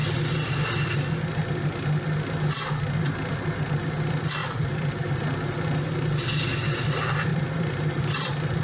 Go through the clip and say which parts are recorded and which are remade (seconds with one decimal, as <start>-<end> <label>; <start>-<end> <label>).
0.0-4.4 recorded; 4.4-5.2 remade; 5.2-7.3 recorded; 7.3-8.6 remade